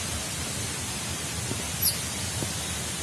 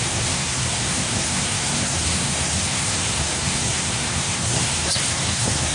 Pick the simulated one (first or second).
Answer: second